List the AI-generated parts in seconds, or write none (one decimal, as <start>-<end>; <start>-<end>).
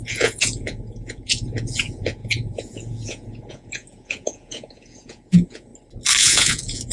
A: 0.0-5.7; 6.2-6.9